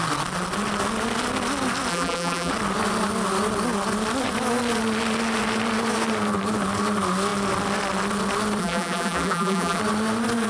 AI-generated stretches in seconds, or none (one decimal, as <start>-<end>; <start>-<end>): 1.9-2.5; 8.6-9.8